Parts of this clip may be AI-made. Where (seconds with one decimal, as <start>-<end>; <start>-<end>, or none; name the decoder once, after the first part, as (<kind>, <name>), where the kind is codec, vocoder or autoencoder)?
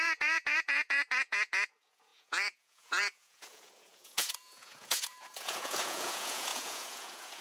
0.0-7.4 (vocoder, Vocos)